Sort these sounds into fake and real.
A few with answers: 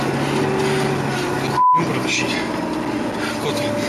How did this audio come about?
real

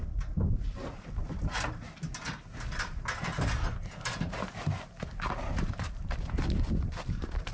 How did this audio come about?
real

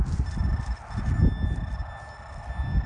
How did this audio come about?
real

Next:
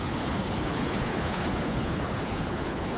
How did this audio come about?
fake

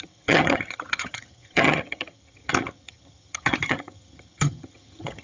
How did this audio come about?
fake